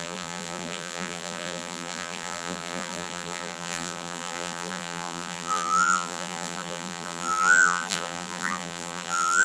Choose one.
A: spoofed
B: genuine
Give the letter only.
A